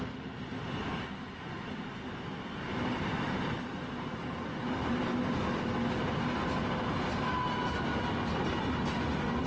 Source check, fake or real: real